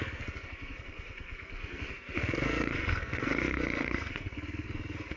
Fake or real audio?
fake